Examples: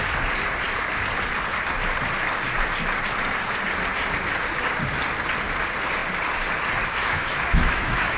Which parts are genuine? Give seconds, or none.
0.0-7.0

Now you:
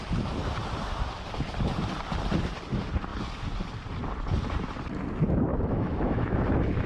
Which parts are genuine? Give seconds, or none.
0.0-5.5; 6.5-6.9

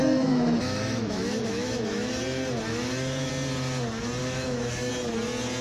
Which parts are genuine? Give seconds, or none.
2.2-2.7; 3.3-4.2; 4.9-5.6

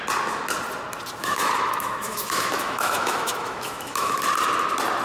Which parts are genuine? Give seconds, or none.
0.0-1.2; 4.2-5.0

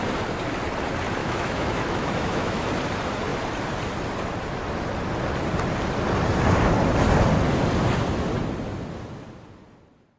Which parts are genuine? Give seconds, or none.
0.0-1.2; 2.7-10.2

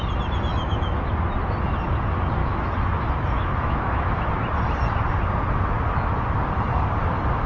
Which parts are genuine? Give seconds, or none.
0.0-0.5; 1.1-2.4; 4.3-7.5

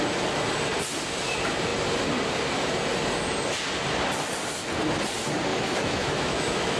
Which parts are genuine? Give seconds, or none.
0.0-5.5

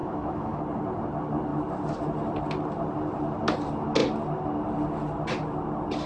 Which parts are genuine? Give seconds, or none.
0.6-6.1